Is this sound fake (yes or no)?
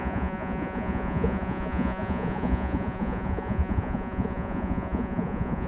yes